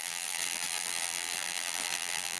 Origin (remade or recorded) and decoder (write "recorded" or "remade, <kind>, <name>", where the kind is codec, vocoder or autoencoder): remade, vocoder, BigVGAN v2